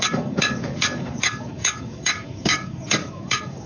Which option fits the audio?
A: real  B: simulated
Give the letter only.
B